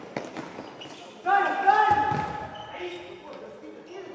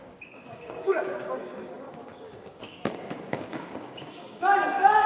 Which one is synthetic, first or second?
second